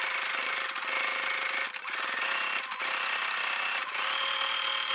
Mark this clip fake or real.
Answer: real